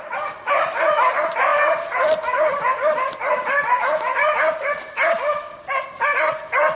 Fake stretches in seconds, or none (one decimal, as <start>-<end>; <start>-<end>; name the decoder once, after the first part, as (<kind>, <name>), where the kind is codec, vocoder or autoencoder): none